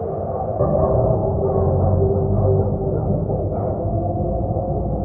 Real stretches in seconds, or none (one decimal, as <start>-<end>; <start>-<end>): 0.0-5.0